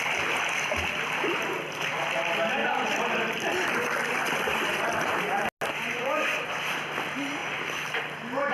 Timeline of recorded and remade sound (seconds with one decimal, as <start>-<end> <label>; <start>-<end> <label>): 0.0-2.6 recorded; 2.6-5.2 remade; 5.2-8.5 recorded